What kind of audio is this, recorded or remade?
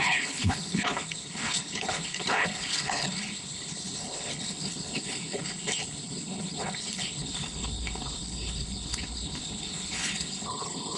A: remade